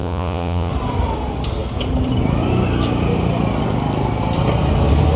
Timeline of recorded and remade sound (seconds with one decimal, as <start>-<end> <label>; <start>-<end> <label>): 0.0-0.7 remade; 0.7-5.2 recorded